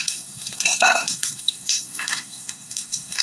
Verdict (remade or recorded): remade